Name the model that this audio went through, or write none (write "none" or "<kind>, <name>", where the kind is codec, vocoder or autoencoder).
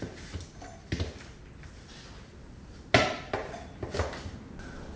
none